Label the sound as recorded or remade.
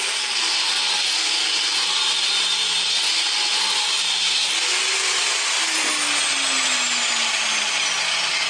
recorded